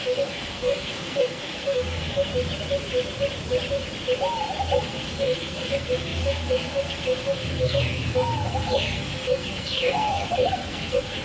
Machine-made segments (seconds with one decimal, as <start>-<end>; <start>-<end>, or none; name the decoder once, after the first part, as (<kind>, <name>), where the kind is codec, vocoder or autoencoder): 0.0-2.3 (codec, SNAC); 4.8-11.2